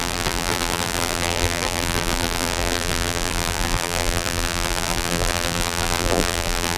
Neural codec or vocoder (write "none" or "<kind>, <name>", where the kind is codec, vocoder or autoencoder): vocoder, BigVGAN v2